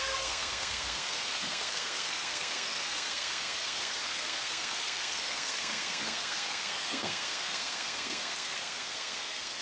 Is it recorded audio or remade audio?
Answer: remade